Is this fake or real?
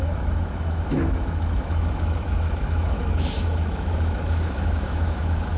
fake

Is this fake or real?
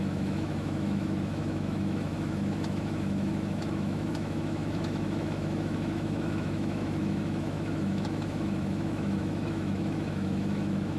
fake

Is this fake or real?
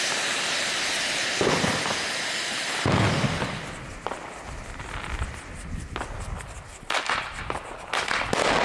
real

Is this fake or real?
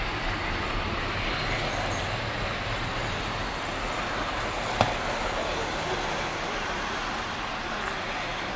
real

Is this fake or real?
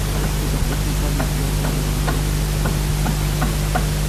real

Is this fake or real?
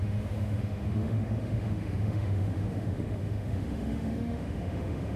fake